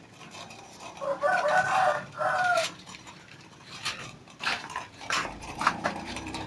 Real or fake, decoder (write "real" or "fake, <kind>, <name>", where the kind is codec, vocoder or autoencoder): fake, vocoder, BigVGAN v2